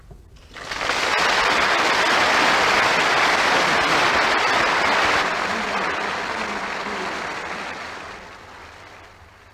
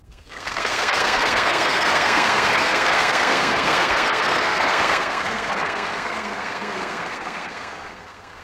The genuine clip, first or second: first